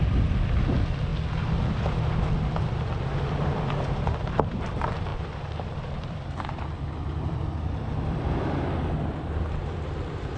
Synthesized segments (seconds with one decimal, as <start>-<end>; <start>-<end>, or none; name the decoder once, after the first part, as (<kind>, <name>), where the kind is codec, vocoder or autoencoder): 0.0-1.1 (vocoder, BigVGAN v2); 2.4-10.4